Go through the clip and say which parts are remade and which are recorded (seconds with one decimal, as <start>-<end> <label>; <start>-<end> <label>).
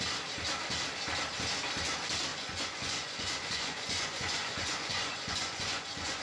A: 0.0-2.3 recorded; 2.3-6.2 remade